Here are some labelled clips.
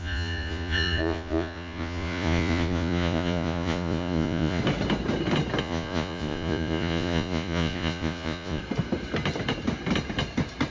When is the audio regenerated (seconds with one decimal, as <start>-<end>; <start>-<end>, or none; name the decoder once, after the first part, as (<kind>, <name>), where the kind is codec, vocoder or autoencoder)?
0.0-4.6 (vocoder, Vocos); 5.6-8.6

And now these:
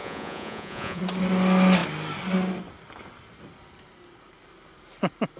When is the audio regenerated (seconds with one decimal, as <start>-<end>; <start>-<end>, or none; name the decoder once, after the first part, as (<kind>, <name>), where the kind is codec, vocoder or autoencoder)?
0.0-1.0 (vocoder, Vocos)

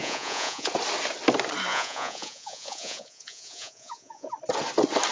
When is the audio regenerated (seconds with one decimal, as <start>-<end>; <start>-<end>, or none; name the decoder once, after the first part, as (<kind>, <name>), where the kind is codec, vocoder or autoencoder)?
0.0-0.7 (vocoder, Vocos); 1.7-4.3

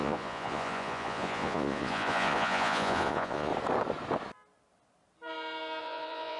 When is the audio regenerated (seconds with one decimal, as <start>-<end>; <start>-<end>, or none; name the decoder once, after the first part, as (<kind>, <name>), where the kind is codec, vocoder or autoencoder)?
0.0-3.5 (vocoder, Vocos); 5.8-6.4

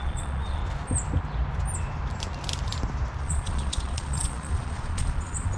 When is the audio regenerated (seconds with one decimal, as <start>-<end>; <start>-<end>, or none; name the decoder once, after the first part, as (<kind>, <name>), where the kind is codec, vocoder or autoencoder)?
0.0-0.6 (vocoder, Vocos); 3.2-5.6

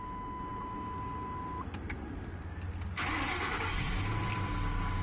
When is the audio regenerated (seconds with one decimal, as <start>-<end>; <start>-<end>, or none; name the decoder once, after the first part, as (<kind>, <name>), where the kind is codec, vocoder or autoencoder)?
none

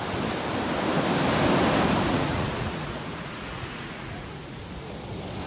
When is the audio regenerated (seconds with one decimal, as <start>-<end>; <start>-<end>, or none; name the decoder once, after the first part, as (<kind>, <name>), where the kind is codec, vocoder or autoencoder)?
2.1-4.6 (vocoder, Vocos)

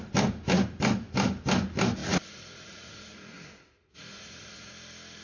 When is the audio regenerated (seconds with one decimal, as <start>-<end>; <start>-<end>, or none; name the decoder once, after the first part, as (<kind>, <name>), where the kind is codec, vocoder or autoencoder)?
2.0-4.7 (vocoder, Vocos)